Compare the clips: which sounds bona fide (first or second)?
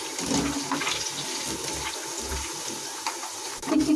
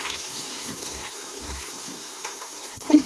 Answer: first